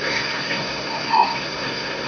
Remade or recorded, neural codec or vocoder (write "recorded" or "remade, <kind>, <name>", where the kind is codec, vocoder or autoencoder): remade, codec, SNAC